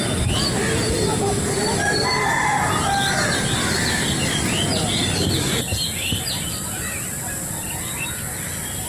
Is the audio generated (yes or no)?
no